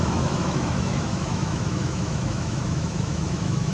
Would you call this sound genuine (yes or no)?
no